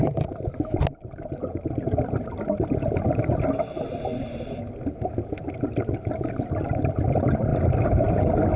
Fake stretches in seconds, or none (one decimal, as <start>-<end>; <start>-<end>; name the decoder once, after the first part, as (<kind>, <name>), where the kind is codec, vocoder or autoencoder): none